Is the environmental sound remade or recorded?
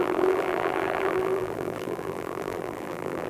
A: remade